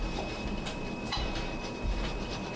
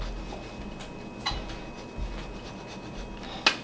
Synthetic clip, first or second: first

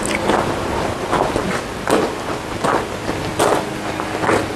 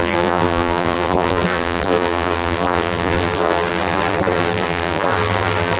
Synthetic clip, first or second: second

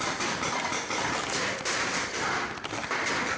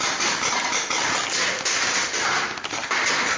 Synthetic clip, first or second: first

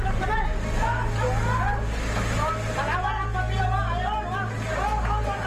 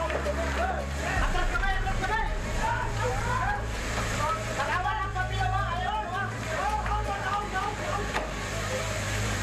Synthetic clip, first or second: second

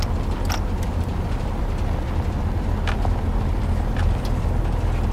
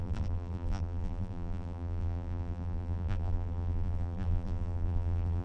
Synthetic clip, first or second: second